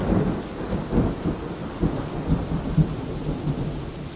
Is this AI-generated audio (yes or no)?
no